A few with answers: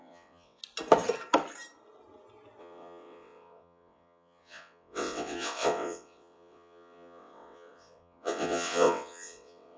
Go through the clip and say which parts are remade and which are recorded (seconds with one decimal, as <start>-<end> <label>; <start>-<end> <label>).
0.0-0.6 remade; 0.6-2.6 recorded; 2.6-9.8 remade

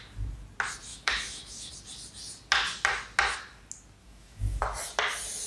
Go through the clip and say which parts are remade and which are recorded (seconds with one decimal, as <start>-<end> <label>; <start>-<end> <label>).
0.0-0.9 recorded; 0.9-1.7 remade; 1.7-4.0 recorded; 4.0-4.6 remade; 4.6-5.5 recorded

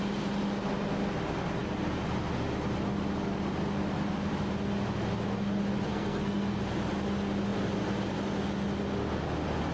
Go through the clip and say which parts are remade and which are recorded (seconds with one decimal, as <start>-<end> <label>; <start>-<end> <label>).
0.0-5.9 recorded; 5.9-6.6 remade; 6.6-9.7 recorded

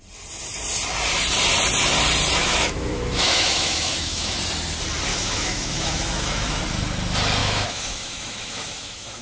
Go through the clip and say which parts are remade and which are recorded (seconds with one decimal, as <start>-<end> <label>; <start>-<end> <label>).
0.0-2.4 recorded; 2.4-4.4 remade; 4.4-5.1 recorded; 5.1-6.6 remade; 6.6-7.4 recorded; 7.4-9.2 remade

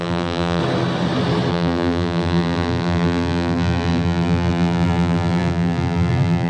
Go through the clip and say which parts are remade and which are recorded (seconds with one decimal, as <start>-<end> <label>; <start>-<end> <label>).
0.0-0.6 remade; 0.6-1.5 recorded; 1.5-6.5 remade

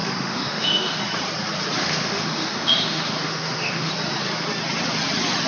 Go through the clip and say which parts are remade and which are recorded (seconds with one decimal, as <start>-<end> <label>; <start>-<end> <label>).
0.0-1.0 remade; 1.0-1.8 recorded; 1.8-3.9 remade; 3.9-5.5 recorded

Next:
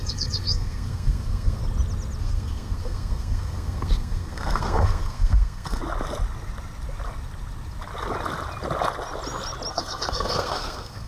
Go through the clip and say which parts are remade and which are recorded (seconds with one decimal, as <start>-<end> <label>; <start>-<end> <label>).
0.0-1.6 remade; 1.6-2.2 recorded; 2.2-5.8 remade; 5.8-9.7 recorded; 9.7-11.1 remade

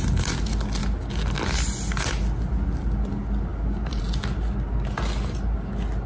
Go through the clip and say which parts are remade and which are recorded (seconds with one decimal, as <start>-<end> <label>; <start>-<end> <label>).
0.0-6.1 recorded